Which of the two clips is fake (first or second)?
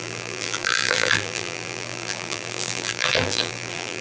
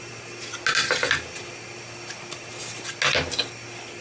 first